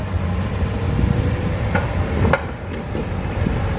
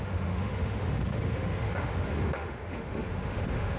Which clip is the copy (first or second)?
second